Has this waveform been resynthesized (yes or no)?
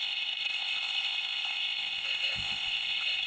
yes